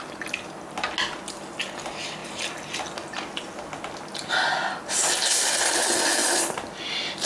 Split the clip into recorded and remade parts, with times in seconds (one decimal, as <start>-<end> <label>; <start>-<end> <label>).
0.0-7.3 recorded